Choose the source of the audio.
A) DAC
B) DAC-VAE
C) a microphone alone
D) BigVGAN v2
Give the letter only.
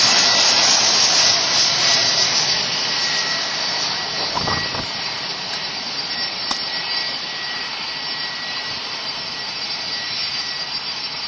D